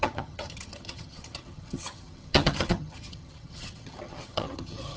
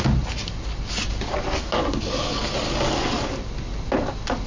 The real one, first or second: second